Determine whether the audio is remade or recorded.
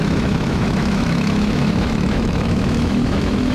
remade